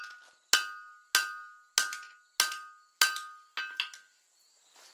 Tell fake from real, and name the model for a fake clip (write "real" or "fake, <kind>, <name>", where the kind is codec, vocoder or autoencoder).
real